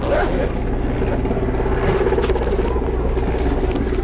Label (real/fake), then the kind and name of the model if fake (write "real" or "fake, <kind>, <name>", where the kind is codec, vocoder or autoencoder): real